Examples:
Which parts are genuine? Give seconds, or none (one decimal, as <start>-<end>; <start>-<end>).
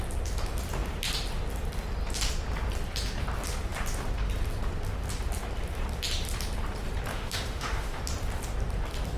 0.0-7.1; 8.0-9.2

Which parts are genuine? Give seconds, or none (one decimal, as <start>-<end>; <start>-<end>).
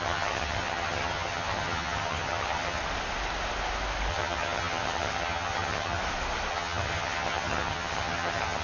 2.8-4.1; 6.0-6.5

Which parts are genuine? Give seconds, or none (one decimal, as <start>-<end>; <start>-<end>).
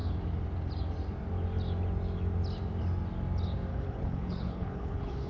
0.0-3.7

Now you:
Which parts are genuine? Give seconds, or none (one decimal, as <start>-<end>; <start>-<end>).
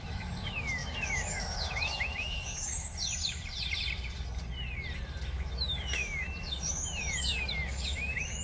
2.9-5.3